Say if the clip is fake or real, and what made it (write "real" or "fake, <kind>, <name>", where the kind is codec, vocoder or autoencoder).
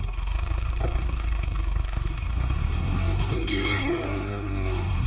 fake, codec, SNAC